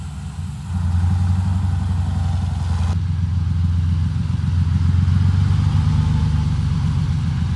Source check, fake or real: real